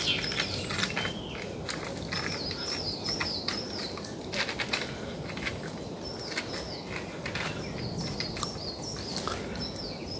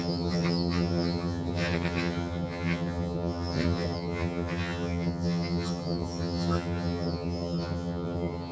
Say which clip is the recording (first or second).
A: first